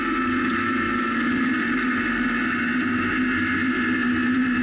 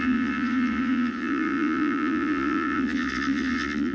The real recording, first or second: first